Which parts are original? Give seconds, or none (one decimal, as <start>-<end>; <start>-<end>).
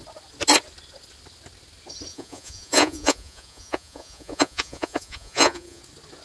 0.0-2.1; 5.8-6.2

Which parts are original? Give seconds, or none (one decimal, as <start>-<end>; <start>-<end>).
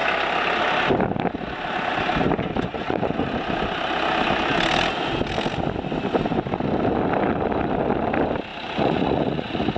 0.0-2.7; 3.3-8.5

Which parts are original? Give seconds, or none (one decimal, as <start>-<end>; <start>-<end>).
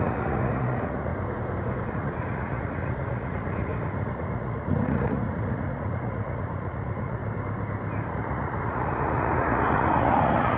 1.1-1.9; 7.2-8.1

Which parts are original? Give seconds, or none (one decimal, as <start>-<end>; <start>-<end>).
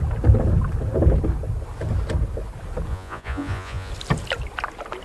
0.0-2.9; 3.9-5.0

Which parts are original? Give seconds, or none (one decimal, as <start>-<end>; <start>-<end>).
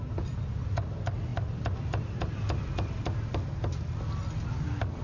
0.0-5.0